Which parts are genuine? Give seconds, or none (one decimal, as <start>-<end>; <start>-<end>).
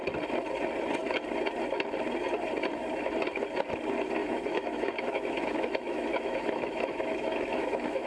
0.0-4.2